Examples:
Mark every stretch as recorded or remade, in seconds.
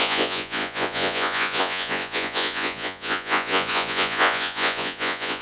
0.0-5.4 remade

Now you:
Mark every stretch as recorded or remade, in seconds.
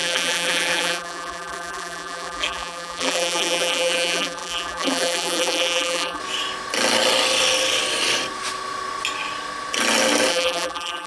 0.0-6.2 remade; 6.2-10.3 recorded; 10.3-11.1 remade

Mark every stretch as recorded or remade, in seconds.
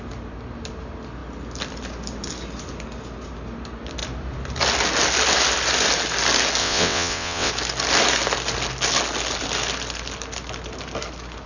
0.0-6.6 recorded; 6.6-7.5 remade; 7.5-11.5 recorded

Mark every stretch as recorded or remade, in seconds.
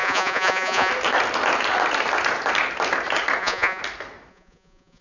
0.0-0.9 remade; 0.9-3.4 recorded; 3.4-3.8 remade; 3.8-4.3 recorded; 4.3-5.0 remade